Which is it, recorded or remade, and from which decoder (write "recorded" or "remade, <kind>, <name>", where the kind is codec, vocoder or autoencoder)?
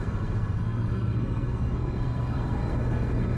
remade, codec, SNAC